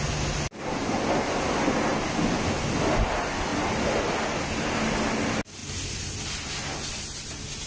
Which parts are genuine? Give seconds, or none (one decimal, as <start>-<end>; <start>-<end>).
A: 0.0-7.7